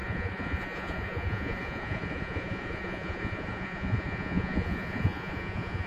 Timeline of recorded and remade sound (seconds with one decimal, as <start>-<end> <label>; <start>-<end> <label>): 0.0-5.9 remade